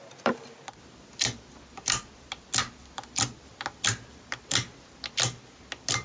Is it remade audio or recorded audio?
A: recorded